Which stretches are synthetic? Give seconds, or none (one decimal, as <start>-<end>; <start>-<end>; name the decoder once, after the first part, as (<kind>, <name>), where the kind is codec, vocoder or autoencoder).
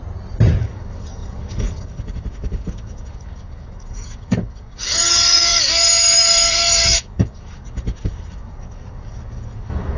0.6-10.0 (codec, DAC)